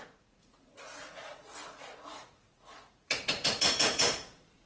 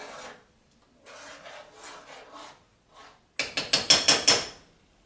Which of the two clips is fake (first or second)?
first